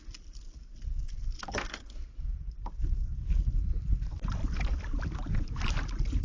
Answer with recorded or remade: recorded